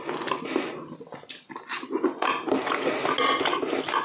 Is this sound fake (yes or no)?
no